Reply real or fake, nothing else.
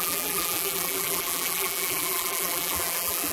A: fake